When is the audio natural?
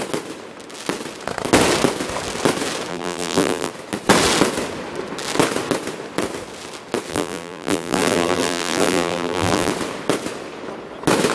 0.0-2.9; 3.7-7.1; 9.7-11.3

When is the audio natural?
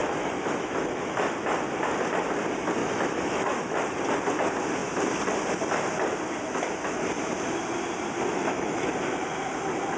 1.2-2.8; 3.9-8.3; 8.9-10.0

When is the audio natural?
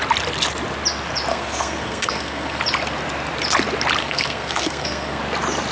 0.0-1.3; 2.6-4.0; 5.2-5.7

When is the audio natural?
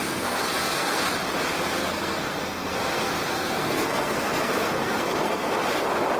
1.0-1.8; 5.5-6.2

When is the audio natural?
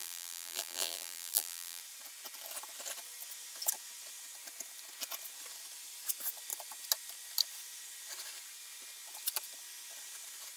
1.8-10.6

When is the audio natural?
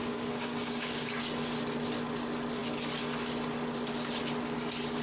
1.2-5.0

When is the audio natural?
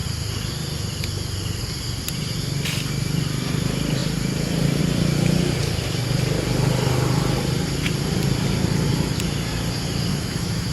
0.0-10.1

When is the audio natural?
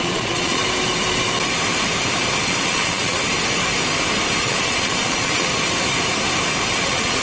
0.6-2.4; 3.2-4.4; 5.5-6.8